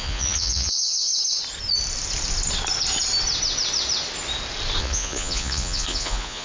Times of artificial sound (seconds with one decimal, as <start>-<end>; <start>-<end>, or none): 0.0-1.1; 4.8-6.4